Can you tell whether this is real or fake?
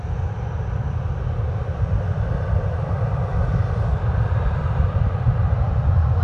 fake